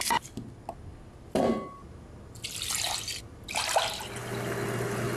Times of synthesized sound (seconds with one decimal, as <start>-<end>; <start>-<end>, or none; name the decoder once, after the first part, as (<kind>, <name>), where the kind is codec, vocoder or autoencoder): none